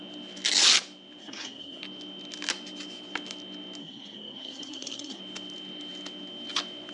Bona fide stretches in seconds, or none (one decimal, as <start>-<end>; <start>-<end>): 0.0-1.2; 1.8-3.8; 5.2-6.9